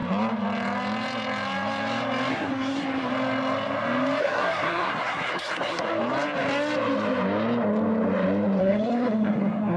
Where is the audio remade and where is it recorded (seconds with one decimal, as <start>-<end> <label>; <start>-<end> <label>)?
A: 0.0-2.3 recorded; 2.3-3.1 remade; 3.1-4.2 recorded; 4.2-5.9 remade; 5.9-8.6 recorded; 8.6-9.8 remade